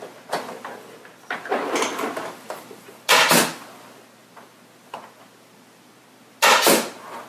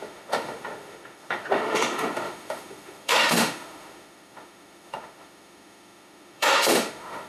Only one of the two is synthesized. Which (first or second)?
second